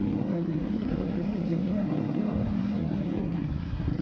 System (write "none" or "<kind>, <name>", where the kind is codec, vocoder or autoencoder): codec, SNAC